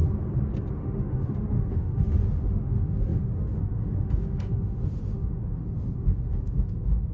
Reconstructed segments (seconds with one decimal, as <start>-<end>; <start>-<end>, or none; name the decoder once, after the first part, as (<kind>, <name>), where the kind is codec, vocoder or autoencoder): 0.7-7.1 (autoencoder, DAC-VAE)